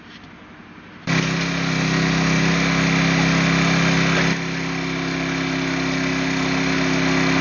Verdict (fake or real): real